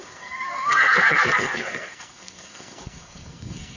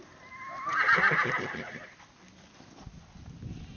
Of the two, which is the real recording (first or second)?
second